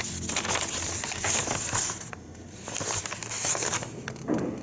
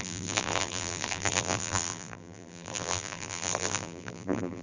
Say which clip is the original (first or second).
first